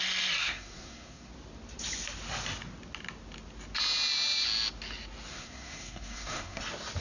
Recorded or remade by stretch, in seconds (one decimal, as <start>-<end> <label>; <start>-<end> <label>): 0.0-0.4 recorded; 0.4-1.3 remade; 1.3-5.3 recorded; 5.3-6.6 remade; 6.6-7.0 recorded